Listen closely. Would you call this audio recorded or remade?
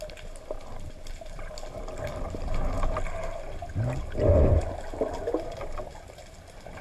recorded